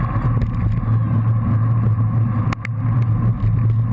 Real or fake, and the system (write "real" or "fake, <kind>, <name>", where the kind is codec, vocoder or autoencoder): real